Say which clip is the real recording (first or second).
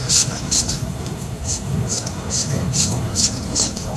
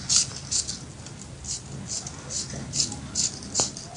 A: second